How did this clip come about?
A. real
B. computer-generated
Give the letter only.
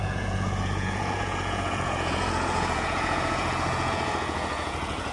B